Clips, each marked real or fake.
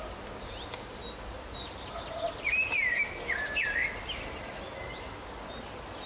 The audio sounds real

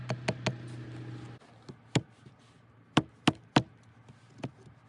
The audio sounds real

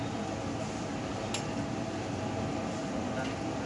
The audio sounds real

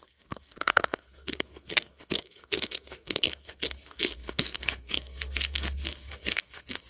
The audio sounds fake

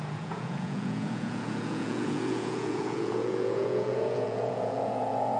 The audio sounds fake